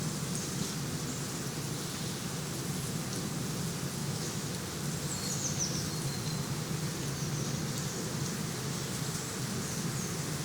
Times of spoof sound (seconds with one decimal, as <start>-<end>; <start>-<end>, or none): 4.0-4.5